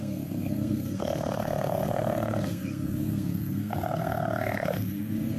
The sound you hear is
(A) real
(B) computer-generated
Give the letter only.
B